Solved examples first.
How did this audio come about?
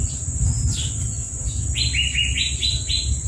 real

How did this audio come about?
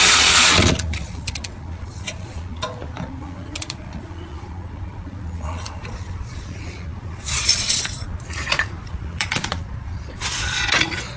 fake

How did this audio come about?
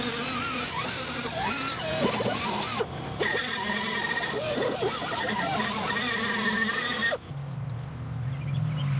real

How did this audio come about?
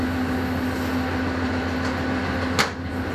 real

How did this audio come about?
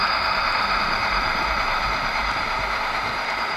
fake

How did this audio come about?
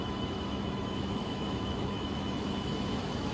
fake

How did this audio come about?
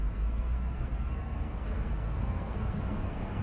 fake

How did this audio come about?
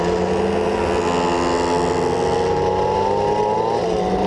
real